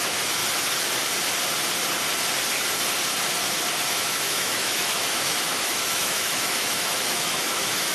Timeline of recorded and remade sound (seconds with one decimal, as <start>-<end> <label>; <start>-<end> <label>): 0.0-0.4 remade; 0.4-3.9 recorded; 3.9-7.9 remade